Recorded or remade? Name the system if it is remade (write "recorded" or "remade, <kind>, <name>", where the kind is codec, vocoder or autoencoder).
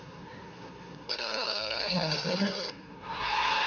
remade, codec, SNAC